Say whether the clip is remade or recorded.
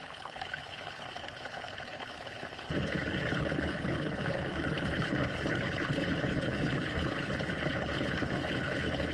remade